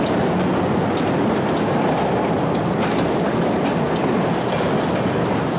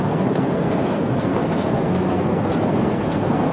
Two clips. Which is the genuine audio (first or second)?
first